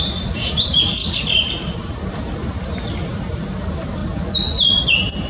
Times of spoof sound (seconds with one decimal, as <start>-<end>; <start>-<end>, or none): 0.0-4.0